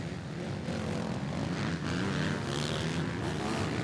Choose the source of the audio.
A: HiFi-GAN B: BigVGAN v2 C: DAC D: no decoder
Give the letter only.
D